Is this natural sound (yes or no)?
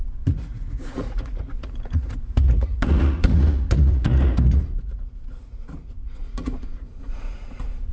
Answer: no